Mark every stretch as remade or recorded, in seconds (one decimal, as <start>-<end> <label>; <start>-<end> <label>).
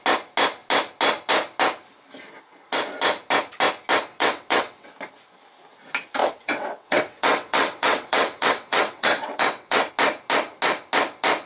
0.0-4.1 recorded; 4.1-4.9 remade; 4.9-6.2 recorded; 6.2-9.9 remade; 9.9-11.5 recorded